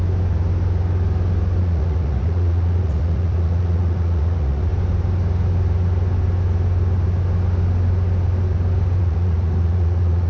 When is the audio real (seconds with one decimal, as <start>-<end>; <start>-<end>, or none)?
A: 0.0-1.6; 4.7-9.0